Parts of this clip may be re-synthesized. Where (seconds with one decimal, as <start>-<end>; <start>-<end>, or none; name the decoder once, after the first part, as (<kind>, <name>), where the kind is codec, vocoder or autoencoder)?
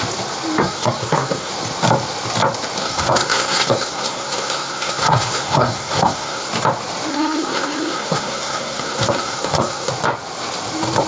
0.6-1.5 (codec, SNAC); 2.8-6.5; 7.1-9.9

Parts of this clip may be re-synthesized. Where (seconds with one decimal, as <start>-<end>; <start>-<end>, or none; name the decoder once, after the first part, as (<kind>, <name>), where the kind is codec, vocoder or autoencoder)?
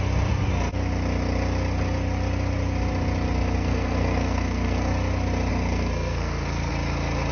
3.6-4.9 (codec, SNAC); 5.5-6.7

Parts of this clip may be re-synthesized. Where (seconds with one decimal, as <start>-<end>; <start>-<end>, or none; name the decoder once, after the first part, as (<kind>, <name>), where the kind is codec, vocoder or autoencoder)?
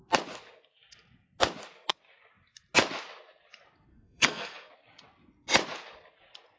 3.9-4.7 (codec, SNAC)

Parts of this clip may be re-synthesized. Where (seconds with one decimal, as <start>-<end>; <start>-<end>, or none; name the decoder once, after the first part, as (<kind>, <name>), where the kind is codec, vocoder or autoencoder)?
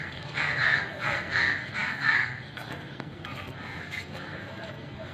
0.0-5.1 (codec, SNAC)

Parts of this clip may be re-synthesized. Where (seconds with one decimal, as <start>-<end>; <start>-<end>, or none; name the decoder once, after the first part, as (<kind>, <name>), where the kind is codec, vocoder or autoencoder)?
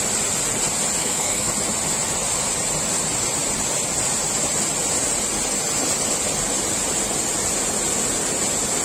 1.0-1.5 (codec, SNAC)